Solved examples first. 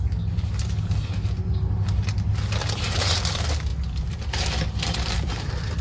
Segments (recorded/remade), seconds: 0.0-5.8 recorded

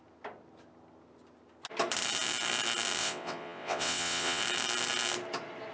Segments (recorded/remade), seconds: 0.0-3.0 recorded; 3.0-4.4 remade; 4.4-5.7 recorded

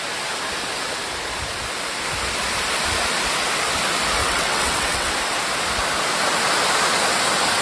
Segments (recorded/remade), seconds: 0.0-4.2 recorded; 4.2-5.1 remade; 5.1-7.6 recorded

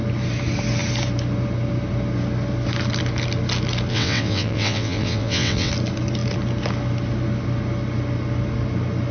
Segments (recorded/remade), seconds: 0.0-3.9 recorded; 3.9-5.7 remade; 5.7-9.1 recorded

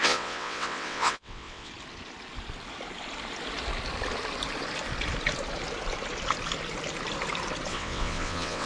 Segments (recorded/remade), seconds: 0.0-1.7 remade; 1.7-7.7 recorded; 7.7-8.7 remade

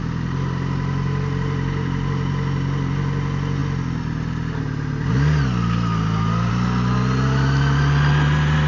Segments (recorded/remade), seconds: 0.0-8.7 recorded

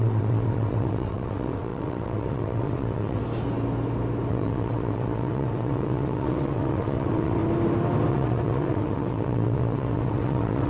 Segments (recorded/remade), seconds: 0.0-3.2 remade; 3.2-4.3 recorded; 4.3-7.4 remade; 7.4-8.1 recorded; 8.1-10.7 remade

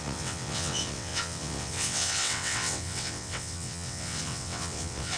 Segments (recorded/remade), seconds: 0.0-5.2 remade